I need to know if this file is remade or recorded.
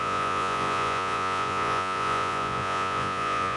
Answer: remade